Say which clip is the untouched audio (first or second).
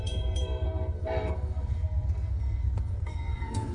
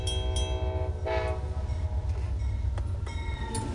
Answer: second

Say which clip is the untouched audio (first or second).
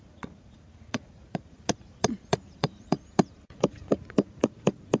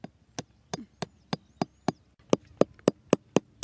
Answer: second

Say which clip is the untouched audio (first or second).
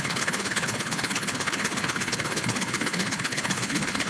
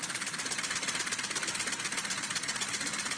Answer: second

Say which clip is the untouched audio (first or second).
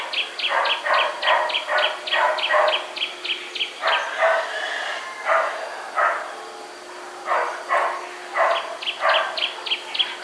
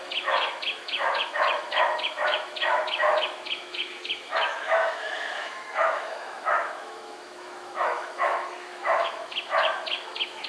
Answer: first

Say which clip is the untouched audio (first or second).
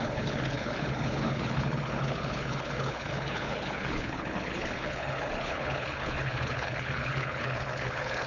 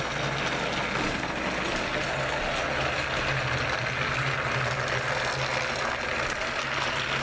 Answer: second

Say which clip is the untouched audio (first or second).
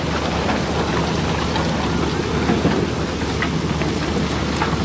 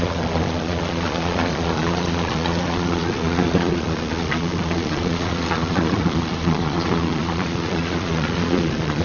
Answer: first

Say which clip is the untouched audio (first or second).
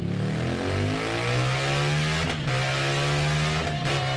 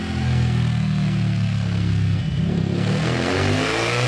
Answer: first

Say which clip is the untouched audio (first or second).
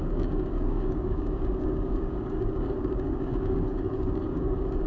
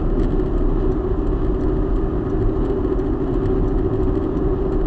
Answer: second